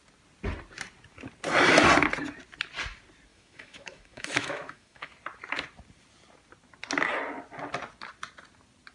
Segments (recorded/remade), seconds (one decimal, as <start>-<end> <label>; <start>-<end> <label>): 0.0-3.3 recorded; 3.3-5.1 remade; 5.1-8.9 recorded